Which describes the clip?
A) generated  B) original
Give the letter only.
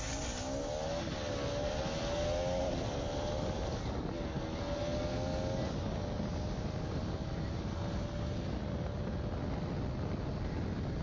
B